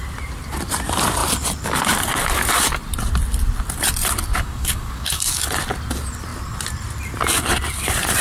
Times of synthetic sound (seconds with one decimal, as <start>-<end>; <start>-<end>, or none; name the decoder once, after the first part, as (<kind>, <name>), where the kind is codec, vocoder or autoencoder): 4.3-5.4 (codec, DAC)